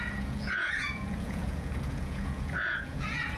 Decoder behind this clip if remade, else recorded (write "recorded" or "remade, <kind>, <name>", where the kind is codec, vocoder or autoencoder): remade, vocoder, Vocos